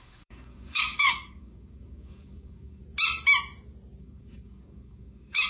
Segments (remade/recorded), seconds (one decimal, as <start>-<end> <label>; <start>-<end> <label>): 0.0-2.8 remade; 2.8-4.0 recorded; 4.0-5.5 remade